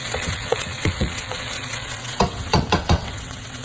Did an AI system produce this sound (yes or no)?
yes